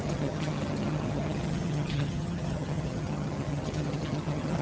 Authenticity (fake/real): fake